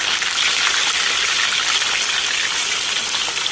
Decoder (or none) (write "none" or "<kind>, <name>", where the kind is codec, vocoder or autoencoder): none